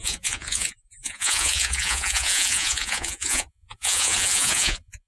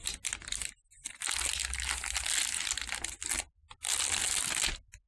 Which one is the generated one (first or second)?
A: first